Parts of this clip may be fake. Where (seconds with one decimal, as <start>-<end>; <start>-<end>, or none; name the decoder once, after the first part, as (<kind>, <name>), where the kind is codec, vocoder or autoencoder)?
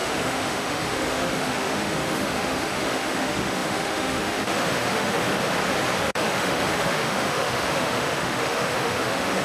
0.0-5.3 (autoencoder, DAC-VAE); 6.0-9.4